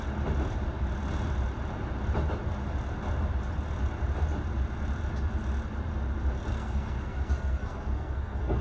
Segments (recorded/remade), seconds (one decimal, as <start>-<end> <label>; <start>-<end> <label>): 0.0-6.5 recorded; 6.5-8.6 remade